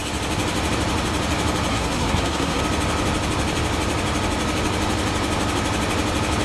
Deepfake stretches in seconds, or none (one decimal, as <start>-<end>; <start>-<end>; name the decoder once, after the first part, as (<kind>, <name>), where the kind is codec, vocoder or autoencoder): 1.7-2.6 (codec, SNAC)